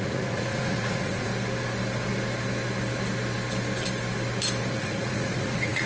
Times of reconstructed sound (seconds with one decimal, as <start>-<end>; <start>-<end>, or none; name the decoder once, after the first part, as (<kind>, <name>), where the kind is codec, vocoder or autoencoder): 0.0-1.3 (vocoder, Vocos); 4.8-5.9